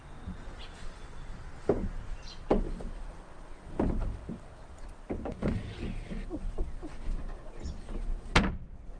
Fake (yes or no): no